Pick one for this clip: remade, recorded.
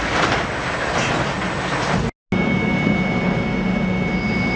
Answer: recorded